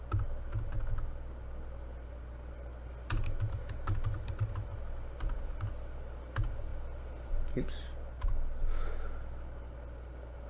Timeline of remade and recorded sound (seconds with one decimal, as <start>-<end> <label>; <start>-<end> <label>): 0.0-10.5 recorded